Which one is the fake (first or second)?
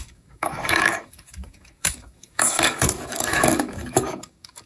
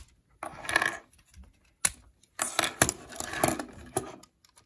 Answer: first